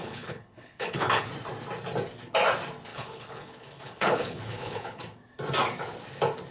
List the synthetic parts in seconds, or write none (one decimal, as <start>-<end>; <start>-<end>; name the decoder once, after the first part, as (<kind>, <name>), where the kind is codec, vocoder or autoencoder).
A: 0.0-1.3 (codec, HILCodec); 2.9-5.0

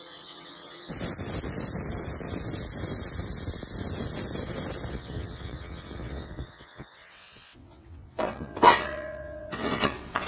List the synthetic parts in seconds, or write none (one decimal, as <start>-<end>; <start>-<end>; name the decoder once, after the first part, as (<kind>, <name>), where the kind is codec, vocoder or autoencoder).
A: 0.0-0.9 (vocoder, WaveNeXt); 4.9-10.3

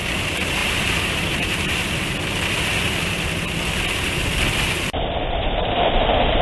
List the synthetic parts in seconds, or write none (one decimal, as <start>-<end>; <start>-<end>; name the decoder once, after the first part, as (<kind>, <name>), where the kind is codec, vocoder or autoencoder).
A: 0.6-1.6 (vocoder, BigVGAN v2)

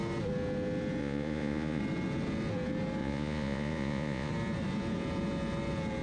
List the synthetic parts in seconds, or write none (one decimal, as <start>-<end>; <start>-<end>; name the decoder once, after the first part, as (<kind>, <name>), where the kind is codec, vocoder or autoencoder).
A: 1.0-1.8 (vocoder, Vocos); 3.0-4.3

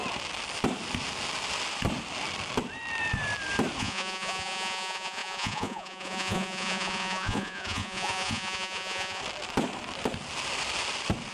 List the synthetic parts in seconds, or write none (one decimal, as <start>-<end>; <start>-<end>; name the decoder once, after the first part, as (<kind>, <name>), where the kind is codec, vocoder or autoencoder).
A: 3.8-9.2 (vocoder, Vocos)

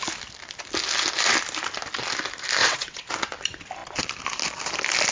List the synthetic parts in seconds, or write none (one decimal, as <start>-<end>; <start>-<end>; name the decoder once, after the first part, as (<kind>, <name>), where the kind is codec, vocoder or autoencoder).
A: 2.6-3.1 (vocoder, WaveNeXt)

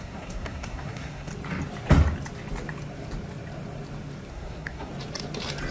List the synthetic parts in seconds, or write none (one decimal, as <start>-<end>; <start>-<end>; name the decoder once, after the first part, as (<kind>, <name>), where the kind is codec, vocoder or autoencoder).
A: 0.0-1.3 (codec, SNAC); 4.3-4.9

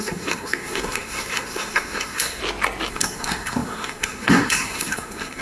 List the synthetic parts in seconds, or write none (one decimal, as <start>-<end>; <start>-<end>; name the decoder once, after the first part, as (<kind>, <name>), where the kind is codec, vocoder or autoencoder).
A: 0.0-2.4 (codec, SNAC); 2.9-5.4